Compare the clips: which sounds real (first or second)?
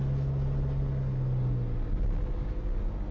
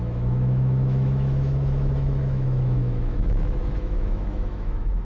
first